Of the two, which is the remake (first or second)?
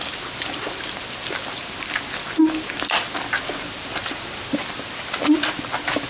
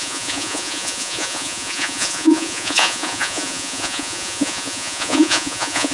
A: second